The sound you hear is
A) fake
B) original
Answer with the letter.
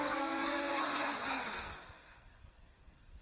A